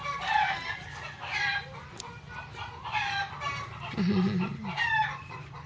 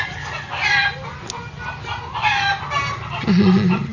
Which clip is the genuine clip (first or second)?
second